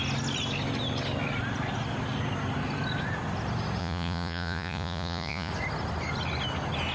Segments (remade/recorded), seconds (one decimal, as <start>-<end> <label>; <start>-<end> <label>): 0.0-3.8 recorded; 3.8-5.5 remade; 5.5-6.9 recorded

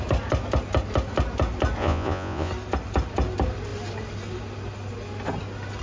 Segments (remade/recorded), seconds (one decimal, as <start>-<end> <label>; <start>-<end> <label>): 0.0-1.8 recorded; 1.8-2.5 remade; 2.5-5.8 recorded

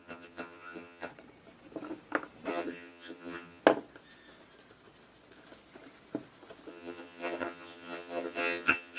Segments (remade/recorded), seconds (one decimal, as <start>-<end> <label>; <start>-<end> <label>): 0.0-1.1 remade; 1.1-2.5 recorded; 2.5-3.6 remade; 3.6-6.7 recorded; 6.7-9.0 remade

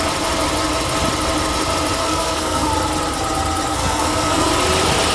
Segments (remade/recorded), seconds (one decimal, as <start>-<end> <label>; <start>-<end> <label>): 0.0-2.0 recorded; 2.0-2.7 remade; 2.7-3.7 recorded; 3.7-4.5 remade; 4.5-5.1 recorded